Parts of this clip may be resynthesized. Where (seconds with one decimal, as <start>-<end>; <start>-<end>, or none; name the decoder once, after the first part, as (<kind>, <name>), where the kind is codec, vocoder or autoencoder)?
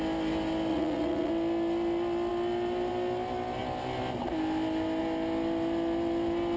0.7-1.3 (vocoder, Vocos)